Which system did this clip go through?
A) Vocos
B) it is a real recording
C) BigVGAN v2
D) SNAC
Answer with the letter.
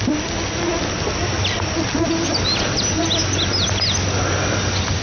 B